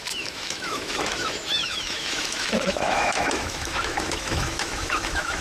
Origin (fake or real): fake